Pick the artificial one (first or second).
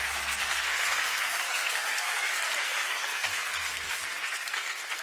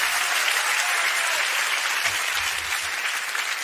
first